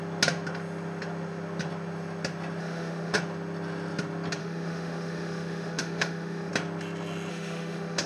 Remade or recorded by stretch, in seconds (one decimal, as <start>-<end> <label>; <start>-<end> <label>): 0.0-2.6 recorded; 2.6-3.2 remade; 3.2-4.4 recorded; 4.4-6.5 remade; 6.5-7.3 recorded; 7.3-8.1 remade